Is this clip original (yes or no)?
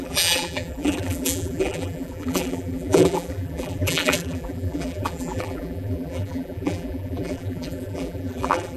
no